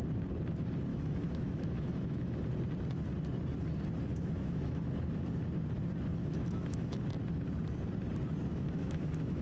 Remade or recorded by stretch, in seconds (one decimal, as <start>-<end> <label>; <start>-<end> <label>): 0.0-0.9 recorded; 0.9-2.4 remade; 2.4-4.1 recorded; 4.1-4.8 remade; 4.8-6.2 recorded; 6.2-7.0 remade; 7.0-8.5 recorded; 8.5-9.4 remade